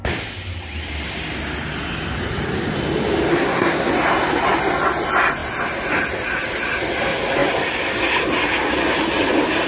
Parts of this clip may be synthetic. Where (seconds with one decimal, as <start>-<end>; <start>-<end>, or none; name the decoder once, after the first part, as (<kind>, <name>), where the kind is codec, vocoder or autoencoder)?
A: 3.3-3.9 (codec, SNAC)